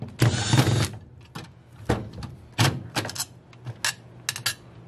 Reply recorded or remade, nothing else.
recorded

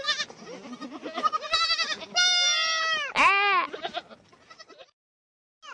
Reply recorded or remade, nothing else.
recorded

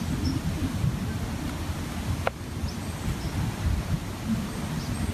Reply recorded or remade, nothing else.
recorded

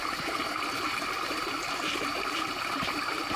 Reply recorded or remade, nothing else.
remade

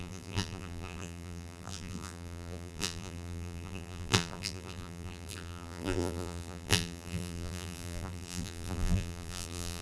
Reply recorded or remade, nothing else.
remade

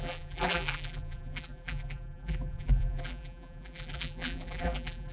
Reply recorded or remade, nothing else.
remade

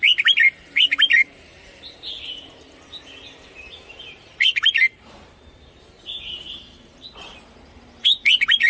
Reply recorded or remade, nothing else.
remade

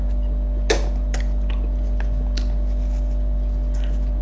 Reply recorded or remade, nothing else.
recorded